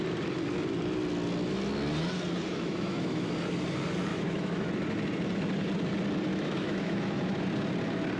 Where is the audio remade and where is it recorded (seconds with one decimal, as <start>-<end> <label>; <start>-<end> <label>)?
0.0-2.5 recorded; 2.5-3.3 remade; 3.3-4.1 recorded; 4.1-4.7 remade; 4.7-6.3 recorded; 6.3-7.2 remade; 7.2-8.2 recorded